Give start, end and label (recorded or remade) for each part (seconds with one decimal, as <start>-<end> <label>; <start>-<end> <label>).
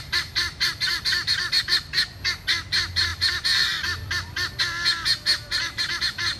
0.0-0.9 recorded; 0.9-1.7 remade; 1.7-3.1 recorded; 3.1-4.6 remade; 4.6-6.4 recorded